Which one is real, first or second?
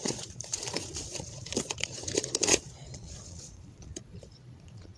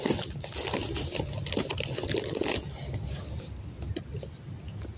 second